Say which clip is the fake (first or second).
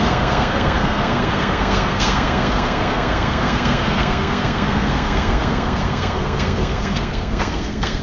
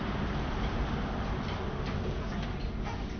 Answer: first